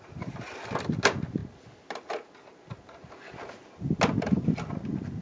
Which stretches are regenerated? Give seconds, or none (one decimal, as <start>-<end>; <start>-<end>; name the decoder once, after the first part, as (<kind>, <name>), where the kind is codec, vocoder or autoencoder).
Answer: none